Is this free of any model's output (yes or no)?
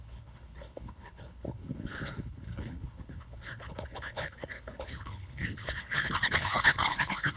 no